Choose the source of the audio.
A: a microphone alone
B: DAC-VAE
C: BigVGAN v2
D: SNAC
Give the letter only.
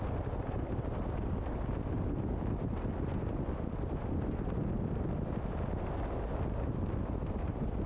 A